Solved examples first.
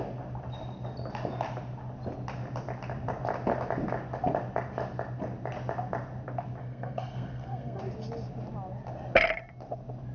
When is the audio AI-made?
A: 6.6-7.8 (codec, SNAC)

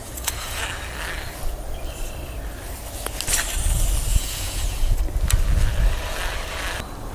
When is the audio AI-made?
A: 0.0-0.6 (vocoder, Vocos); 4.1-5.0

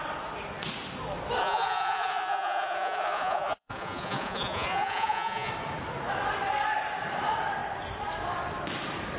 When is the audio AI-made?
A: 1.4-5.5 (vocoder, Vocos)

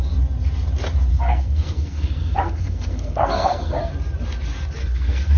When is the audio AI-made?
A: 1.1-3.9 (codec, SNAC); 4.8-5.4

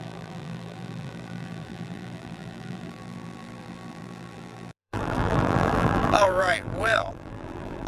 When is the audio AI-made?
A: 0.0-7.9 (vocoder, BigVGAN v2)

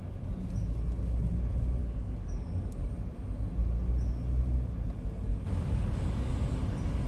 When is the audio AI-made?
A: 1.8-2.9 (codec, DAC); 5.3-6.3